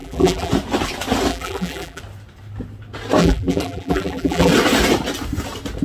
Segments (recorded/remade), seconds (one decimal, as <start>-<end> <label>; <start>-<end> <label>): 0.0-0.5 remade; 0.5-1.3 recorded; 1.3-2.0 remade; 2.0-3.2 recorded; 3.2-4.5 remade; 4.5-5.8 recorded